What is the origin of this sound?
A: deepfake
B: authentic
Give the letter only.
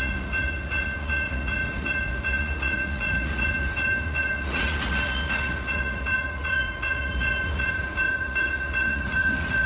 A